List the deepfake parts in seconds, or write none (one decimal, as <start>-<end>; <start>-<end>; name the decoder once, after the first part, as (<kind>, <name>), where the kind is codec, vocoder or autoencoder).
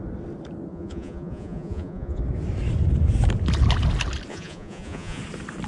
0.7-2.2 (vocoder, Vocos); 4.3-5.2